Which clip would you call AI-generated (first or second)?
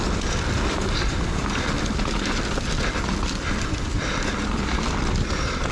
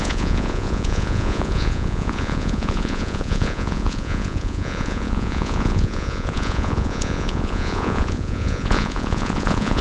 second